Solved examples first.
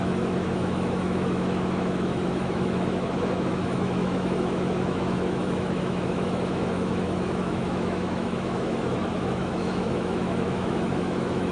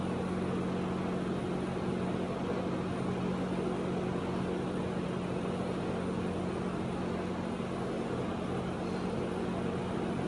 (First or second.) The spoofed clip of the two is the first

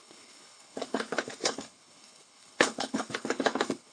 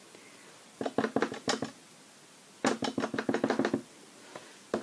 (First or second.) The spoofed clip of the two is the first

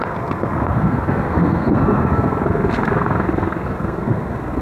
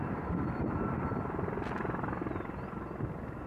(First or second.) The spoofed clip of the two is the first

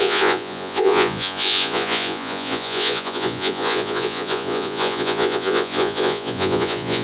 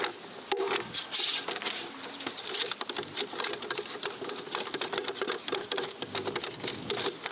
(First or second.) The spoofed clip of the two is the first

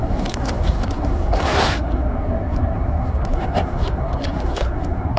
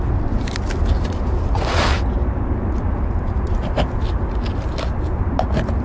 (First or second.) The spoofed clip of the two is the first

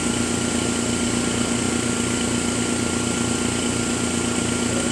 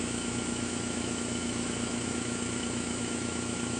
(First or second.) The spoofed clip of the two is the second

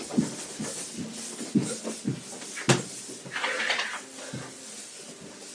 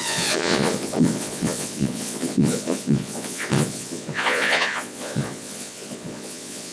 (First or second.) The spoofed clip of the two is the second